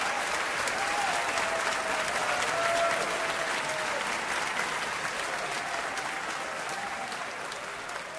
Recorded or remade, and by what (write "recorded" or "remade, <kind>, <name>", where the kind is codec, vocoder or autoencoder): recorded